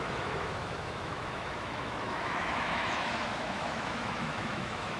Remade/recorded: remade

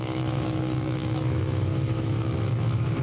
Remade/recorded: remade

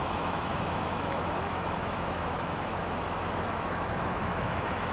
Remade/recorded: remade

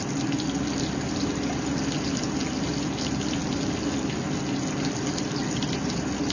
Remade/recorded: recorded